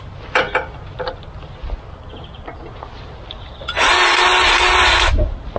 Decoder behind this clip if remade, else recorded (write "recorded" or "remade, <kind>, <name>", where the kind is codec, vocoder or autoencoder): recorded